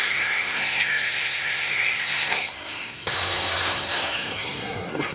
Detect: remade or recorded remade